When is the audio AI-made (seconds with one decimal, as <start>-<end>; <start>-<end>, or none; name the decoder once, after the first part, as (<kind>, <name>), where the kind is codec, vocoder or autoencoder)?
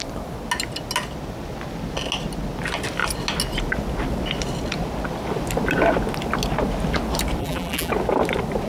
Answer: 7.4-7.9 (vocoder, BigVGAN v2)